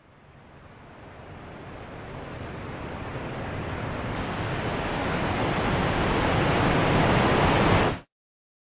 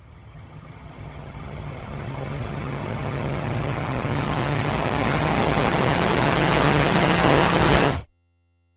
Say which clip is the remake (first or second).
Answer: second